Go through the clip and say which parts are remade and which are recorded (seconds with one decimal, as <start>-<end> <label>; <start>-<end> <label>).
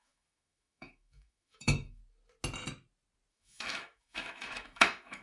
0.0-2.0 remade; 2.0-3.3 recorded; 3.3-5.2 remade